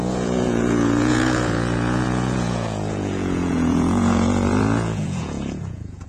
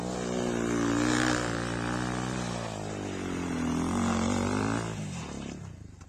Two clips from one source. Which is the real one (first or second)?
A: second